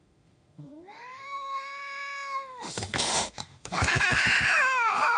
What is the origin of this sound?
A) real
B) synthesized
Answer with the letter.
B